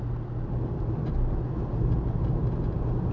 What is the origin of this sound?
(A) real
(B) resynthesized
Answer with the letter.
A